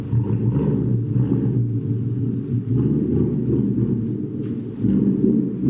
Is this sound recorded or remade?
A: recorded